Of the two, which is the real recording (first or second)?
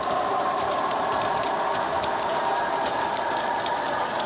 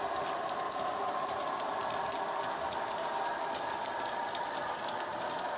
second